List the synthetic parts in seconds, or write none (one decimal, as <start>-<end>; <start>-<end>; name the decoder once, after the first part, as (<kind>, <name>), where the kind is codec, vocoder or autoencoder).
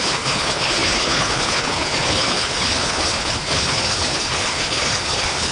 0.0-5.5 (codec, HILCodec)